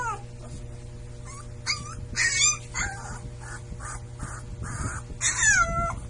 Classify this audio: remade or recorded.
recorded